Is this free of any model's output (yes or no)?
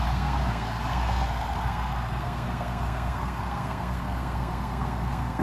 no